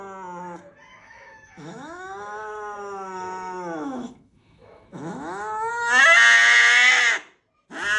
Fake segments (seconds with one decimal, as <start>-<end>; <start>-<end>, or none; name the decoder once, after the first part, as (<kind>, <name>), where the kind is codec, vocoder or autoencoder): 0.9-5.7 (autoencoder, DAC-VAE)